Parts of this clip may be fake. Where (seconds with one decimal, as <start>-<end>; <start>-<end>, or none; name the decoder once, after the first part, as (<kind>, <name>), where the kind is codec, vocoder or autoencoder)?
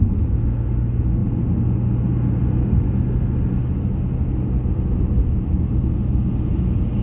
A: none